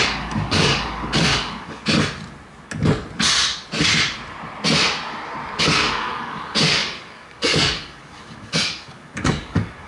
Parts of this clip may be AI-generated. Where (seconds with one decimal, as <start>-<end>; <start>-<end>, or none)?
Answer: 0.0-1.8; 5.6-9.9